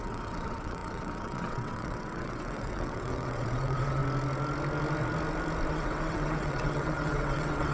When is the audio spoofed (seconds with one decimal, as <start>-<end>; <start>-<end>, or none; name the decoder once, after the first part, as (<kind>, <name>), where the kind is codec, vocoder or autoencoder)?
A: 0.0-4.0 (vocoder, WaveNeXt); 5.7-7.7